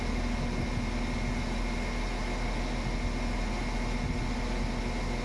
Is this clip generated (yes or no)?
no